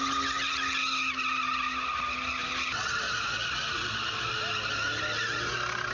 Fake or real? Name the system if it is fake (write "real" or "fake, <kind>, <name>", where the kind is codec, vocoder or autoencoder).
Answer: real